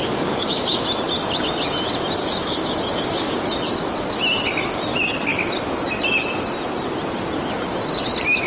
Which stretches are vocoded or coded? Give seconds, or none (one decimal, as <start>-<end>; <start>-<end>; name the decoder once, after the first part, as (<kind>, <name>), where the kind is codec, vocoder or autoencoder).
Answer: 0.0-0.8 (codec, DAC); 2.2-3.5

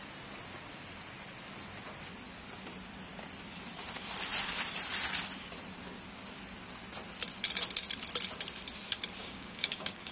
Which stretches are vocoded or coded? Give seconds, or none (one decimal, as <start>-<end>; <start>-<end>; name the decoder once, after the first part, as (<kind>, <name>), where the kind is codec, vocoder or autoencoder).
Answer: 9.2-10.1 (codec, DAC)